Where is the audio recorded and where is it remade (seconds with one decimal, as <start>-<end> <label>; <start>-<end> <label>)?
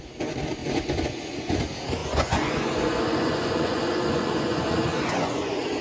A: 0.0-0.6 recorded; 0.6-1.6 remade; 1.6-2.0 recorded; 2.0-5.8 remade